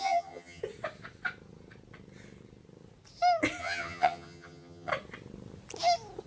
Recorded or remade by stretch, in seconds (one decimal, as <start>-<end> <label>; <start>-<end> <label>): 0.0-0.6 remade; 0.6-3.6 recorded; 3.6-4.9 remade; 4.9-6.3 recorded